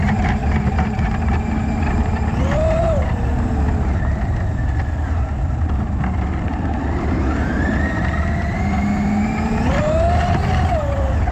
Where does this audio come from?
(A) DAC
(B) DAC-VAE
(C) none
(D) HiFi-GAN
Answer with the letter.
C